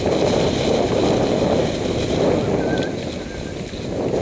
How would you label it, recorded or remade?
recorded